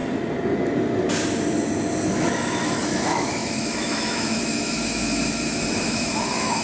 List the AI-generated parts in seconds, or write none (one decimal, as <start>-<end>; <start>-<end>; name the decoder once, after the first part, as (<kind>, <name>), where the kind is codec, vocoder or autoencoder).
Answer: 2.1-6.6 (autoencoder, DAC-VAE)